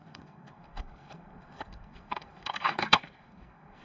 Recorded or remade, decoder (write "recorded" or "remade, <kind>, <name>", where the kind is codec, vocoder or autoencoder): remade, codec, SNAC